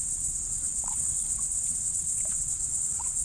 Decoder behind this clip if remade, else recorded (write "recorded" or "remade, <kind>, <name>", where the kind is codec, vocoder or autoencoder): remade, vocoder, Vocos